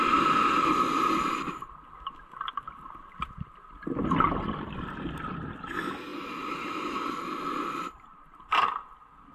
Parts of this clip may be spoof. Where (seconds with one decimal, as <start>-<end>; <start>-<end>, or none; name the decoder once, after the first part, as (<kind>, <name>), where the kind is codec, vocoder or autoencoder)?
none